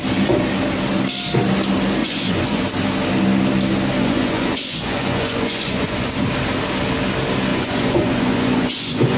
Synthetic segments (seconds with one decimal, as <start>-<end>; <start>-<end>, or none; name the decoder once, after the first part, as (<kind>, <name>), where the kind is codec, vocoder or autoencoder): 2.0-2.6 (vocoder, Vocos); 4.0-6.1; 7.5-9.2